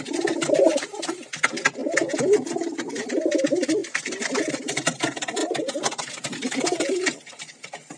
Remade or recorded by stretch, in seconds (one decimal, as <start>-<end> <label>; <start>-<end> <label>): 0.0-1.8 remade; 1.8-2.9 recorded; 2.9-5.4 remade; 5.4-6.9 recorded; 6.9-8.0 remade